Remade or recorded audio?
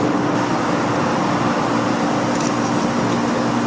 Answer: recorded